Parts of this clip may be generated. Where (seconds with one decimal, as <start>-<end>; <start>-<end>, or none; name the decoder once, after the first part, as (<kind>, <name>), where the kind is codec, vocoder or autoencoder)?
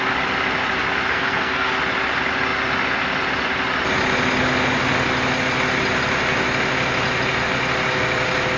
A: 1.1-1.7 (codec, SNAC)